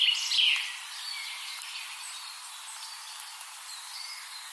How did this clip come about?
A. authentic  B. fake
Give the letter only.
A